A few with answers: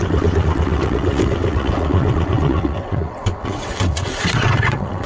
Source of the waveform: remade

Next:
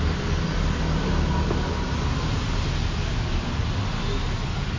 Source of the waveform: recorded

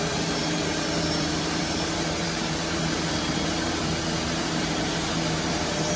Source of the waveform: remade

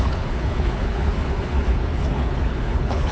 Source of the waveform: remade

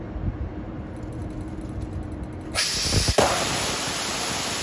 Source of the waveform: recorded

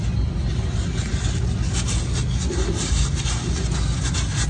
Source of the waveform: recorded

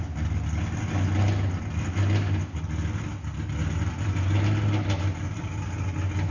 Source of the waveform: recorded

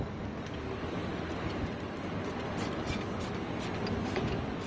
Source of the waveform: recorded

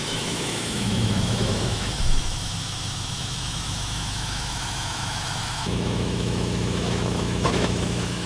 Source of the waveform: remade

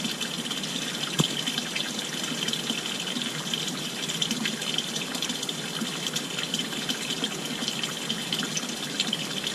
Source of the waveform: recorded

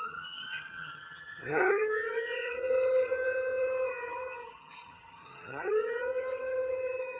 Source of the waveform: remade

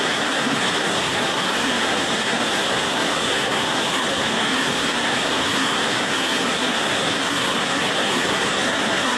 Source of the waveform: remade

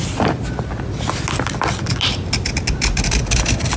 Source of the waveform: recorded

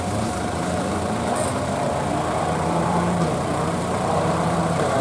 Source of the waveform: remade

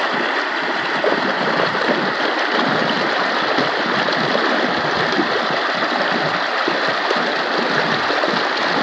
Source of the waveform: recorded